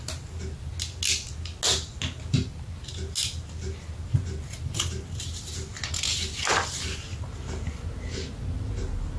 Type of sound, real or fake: real